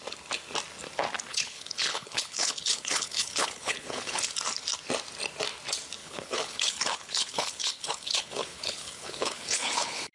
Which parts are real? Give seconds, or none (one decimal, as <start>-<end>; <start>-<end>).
0.0-1.3; 4.2-6.0